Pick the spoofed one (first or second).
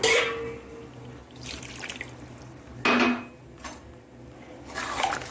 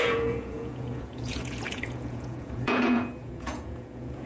second